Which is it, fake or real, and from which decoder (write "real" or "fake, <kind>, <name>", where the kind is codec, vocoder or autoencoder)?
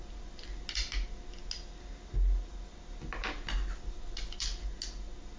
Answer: real